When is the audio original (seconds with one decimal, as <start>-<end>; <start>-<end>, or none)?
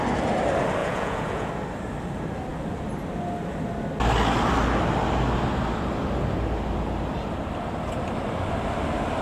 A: 0.0-0.8; 1.5-9.2